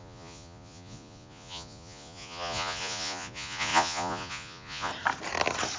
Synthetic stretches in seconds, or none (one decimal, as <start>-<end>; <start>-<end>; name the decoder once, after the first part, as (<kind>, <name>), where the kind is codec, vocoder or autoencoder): 0.0-4.9 (vocoder, Vocos)